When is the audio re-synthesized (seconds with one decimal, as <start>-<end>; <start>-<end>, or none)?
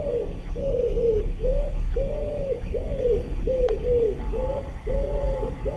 0.0-0.6; 1.2-5.8